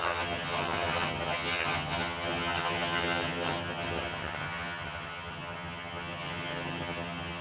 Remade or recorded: remade